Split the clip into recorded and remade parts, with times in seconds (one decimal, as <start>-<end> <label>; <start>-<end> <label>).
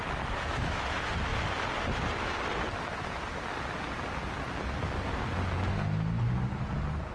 0.0-7.1 recorded